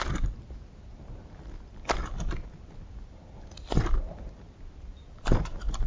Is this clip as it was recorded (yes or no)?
yes